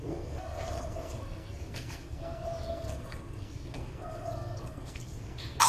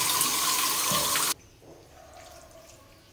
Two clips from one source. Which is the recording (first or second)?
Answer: second